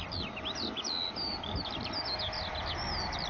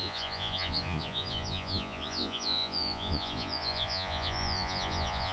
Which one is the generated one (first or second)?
second